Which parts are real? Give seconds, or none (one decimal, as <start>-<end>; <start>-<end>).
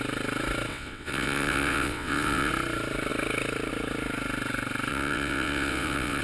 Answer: 0.0-0.7; 2.5-4.9